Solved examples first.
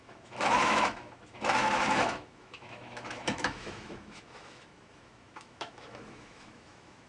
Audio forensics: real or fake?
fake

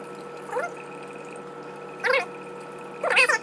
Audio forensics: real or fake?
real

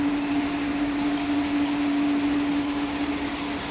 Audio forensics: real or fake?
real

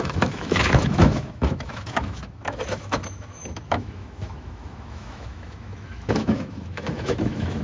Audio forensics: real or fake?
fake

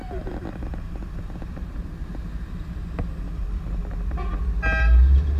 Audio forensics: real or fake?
real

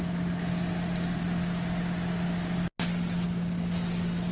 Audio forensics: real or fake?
real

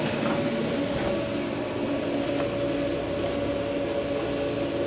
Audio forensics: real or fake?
real